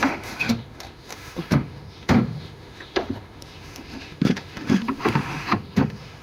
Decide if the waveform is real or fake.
fake